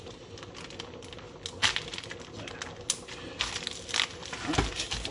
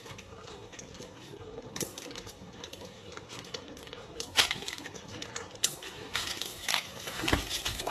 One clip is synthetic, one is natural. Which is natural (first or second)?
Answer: first